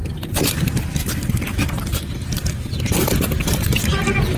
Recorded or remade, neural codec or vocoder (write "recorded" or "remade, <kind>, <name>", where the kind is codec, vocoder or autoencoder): recorded